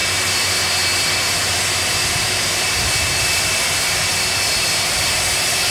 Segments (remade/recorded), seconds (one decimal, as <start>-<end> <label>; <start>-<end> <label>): 0.0-5.7 recorded